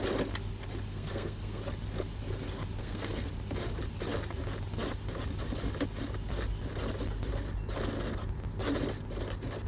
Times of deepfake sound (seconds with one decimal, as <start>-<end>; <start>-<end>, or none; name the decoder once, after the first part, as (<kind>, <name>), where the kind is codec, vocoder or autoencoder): 0.9-1.6 (codec, SNAC); 2.8-3.3